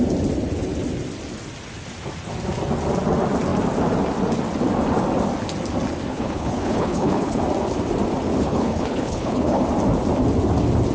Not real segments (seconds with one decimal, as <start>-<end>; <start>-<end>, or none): 6.1-7.4; 8.4-9.6